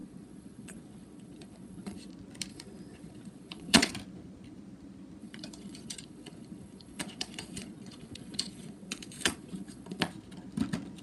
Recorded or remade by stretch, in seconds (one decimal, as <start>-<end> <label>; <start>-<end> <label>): 0.0-2.1 remade; 2.1-2.5 recorded; 2.5-3.9 remade; 3.9-5.2 recorded; 5.2-10.1 remade; 10.1-11.0 recorded